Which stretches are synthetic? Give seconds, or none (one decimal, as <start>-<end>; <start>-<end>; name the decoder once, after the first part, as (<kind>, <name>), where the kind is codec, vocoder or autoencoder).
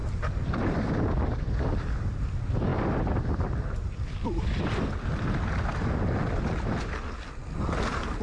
0.0-1.5 (vocoder, BigVGAN v2); 2.7-5.1